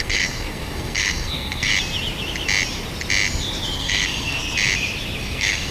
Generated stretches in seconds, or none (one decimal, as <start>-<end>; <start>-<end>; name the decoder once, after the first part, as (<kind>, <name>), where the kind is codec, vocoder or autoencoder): 0.0-1.7 (codec, SNAC); 3.8-4.4; 5.2-5.7

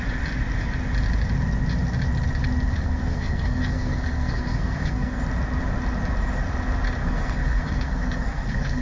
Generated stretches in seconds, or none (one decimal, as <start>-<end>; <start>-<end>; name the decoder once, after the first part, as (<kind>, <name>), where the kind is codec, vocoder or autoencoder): 2.7-5.2 (codec, SNAC); 7.0-8.8

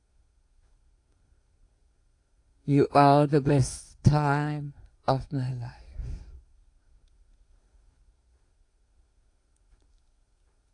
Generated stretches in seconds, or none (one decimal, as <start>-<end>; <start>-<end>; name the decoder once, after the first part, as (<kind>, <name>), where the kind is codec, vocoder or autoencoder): 0.0-10.7 (codec, SNAC)

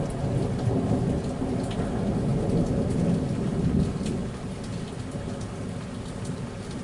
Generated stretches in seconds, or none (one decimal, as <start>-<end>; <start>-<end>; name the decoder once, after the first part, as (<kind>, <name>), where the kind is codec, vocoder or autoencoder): none

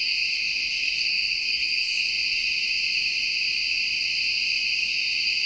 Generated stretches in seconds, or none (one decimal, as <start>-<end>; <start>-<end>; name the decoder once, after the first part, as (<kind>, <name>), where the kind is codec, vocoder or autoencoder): 0.0-2.1 (codec, SNAC)

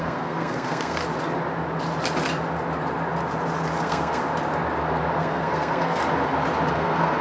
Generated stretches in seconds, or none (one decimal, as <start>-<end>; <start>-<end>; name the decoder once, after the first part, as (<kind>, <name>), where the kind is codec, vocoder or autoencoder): 0.0-1.0 (codec, SNAC); 3.8-4.2; 5.2-6.0; 6.7-7.2

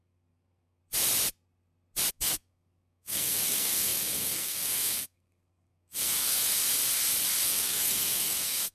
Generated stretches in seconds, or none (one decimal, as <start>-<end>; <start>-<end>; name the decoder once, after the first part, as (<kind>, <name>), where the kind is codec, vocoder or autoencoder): 0.0-0.8 (codec, SNAC); 2.1-6.6; 7.4-8.7

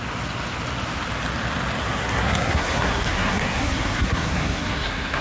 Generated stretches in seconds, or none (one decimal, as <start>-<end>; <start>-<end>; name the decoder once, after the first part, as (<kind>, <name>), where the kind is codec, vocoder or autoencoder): 1.8-5.2 (codec, SNAC)